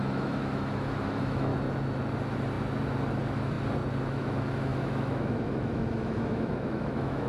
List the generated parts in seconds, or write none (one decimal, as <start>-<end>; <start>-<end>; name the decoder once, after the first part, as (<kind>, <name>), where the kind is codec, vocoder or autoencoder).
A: 0.0-1.5 (autoencoder, DAC-VAE); 4.0-7.3